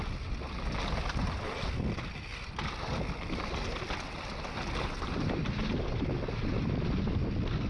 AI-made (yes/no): no